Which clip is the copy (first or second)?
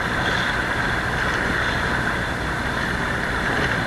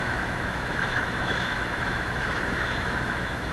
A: second